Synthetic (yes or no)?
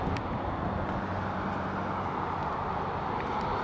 no